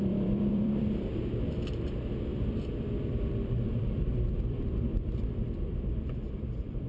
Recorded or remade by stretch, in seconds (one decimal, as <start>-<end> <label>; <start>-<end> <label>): 0.0-6.9 remade